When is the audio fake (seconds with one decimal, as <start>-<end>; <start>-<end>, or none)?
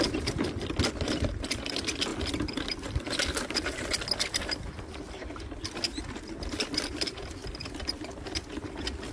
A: none